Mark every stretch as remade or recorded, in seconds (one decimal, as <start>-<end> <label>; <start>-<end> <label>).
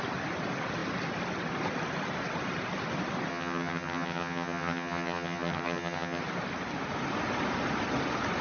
0.0-3.3 recorded; 3.3-6.2 remade; 6.2-8.4 recorded